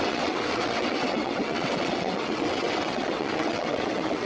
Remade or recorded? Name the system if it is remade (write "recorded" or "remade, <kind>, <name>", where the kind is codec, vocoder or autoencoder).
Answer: remade, vocoder, WaveNeXt